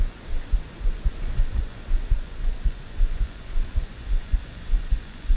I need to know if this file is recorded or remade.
remade